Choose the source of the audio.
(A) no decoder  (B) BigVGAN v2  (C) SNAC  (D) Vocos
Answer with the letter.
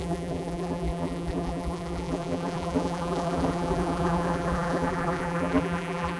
B